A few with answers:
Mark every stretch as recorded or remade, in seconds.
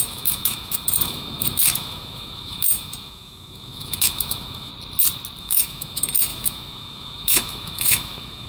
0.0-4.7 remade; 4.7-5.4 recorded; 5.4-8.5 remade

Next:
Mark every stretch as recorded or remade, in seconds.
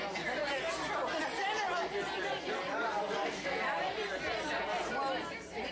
0.0-3.0 recorded; 3.0-3.6 remade; 3.6-5.7 recorded